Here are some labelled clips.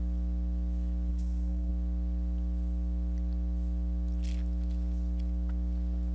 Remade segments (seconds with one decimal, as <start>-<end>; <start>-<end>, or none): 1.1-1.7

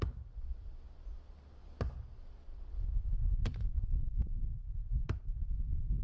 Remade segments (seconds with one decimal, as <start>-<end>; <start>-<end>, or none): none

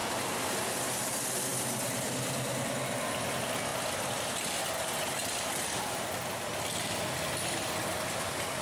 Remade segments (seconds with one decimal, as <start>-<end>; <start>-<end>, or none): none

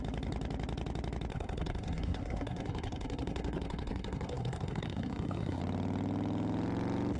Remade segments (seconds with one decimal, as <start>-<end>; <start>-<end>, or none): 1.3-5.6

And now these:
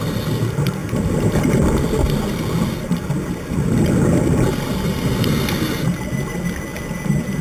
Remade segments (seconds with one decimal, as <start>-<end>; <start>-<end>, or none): none